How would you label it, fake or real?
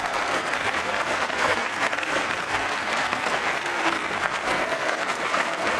fake